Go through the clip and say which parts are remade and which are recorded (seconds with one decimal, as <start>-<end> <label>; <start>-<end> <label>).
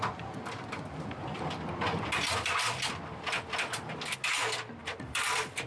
0.0-4.8 recorded; 4.8-5.7 remade